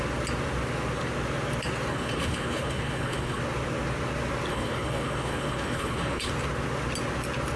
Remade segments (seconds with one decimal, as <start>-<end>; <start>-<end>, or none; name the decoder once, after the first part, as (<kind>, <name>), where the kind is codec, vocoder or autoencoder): 1.9-3.4 (codec, HILCodec); 4.5-6.3